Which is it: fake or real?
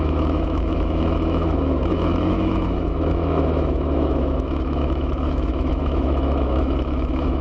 fake